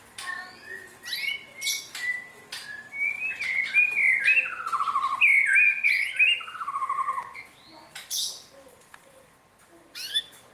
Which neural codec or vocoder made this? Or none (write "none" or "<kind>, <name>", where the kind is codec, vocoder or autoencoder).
none